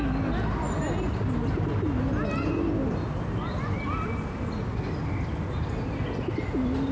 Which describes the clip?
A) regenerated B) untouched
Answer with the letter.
B